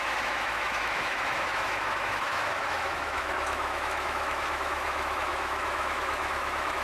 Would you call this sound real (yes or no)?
no